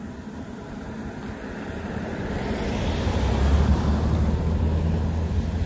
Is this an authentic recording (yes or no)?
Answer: yes